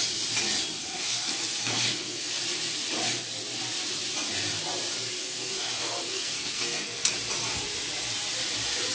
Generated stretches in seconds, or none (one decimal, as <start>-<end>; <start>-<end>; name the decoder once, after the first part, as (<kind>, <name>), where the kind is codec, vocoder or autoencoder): 0.8-2.4 (codec, SNAC); 5.2-7.1